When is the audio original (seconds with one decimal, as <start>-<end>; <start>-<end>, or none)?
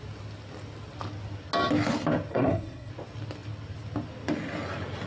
0.0-2.3; 2.9-5.1